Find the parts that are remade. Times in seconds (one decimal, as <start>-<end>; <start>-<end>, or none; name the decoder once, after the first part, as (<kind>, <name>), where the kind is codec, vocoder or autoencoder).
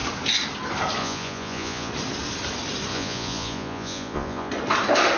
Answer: 1.0-1.9 (vocoder, Vocos); 2.9-4.5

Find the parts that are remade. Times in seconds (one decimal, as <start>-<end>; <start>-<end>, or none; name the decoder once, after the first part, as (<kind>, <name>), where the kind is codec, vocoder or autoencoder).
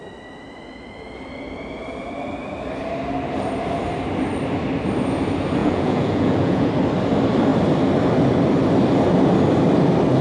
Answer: 5.6-6.7 (vocoder, Vocos)